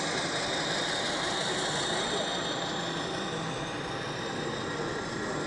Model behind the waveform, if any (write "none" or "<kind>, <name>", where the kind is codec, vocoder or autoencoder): none